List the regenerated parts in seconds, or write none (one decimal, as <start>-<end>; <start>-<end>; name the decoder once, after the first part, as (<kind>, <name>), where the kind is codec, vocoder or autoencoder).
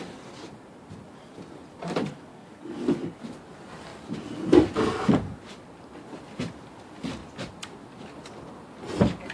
2.3-3.1 (codec, DAC)